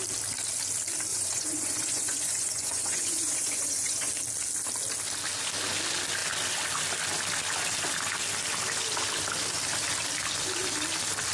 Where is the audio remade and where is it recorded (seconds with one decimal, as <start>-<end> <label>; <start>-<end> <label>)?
0.0-1.1 recorded; 1.1-4.1 remade; 4.1-11.3 recorded